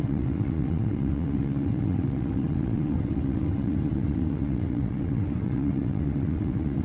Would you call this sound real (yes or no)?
no